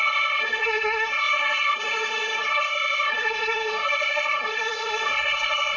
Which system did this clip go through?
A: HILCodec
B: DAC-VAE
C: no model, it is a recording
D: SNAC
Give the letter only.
D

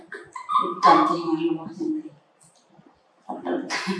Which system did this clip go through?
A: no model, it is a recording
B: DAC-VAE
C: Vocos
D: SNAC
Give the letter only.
A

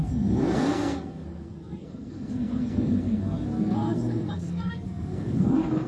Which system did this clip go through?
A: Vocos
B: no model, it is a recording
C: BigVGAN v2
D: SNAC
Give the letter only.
D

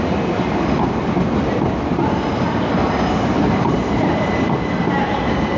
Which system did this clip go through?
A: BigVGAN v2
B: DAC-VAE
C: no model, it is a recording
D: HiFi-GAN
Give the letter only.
C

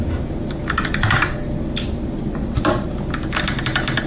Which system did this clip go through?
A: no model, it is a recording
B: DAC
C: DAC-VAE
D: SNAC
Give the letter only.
A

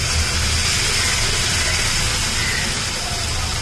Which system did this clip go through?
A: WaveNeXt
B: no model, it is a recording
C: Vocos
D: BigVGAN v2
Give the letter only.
B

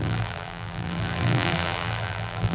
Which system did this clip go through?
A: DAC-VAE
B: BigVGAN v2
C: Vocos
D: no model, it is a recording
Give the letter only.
B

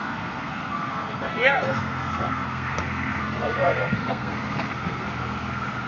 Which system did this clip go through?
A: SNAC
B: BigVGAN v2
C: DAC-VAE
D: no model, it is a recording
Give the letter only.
A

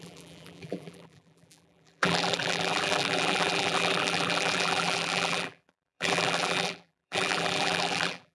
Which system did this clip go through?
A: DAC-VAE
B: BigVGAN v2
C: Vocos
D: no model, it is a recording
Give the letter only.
B